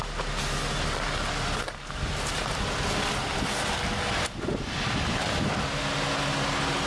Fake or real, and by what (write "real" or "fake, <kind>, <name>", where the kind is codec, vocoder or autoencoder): real